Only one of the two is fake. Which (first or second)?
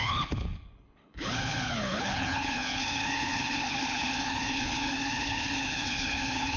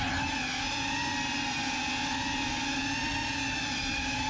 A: first